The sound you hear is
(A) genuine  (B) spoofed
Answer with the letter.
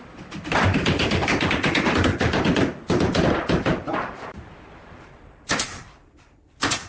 A